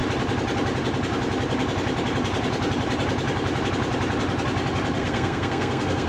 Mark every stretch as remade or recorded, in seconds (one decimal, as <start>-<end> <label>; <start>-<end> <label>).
0.0-5.0 recorded; 5.0-6.1 remade